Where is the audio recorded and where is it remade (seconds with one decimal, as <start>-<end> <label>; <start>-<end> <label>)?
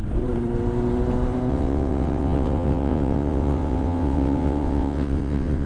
0.0-1.5 recorded; 1.5-5.7 remade